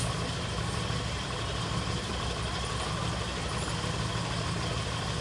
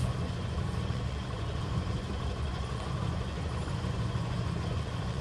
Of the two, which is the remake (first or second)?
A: second